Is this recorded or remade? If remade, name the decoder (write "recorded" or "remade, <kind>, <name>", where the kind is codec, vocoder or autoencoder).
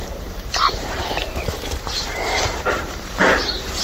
remade, vocoder, BigVGAN v2